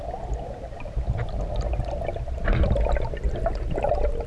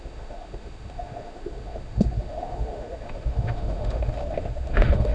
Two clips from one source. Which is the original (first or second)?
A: first